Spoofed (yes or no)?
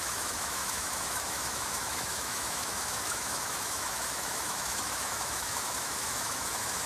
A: yes